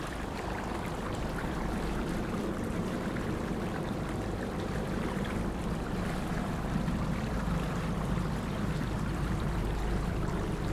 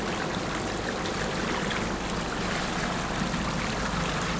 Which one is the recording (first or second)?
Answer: second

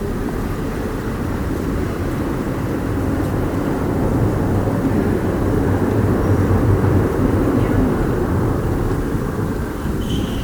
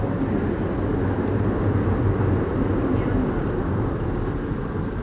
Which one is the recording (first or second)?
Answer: second